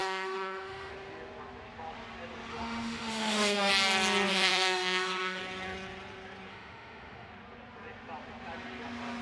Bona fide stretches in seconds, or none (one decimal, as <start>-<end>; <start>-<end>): 0.9-2.5; 3.7-4.3; 5.4-6.5; 7.3-9.2